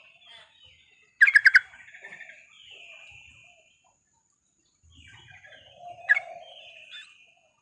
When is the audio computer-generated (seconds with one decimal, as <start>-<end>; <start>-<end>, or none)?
3.4-6.7